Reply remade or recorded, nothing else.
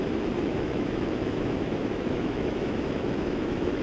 remade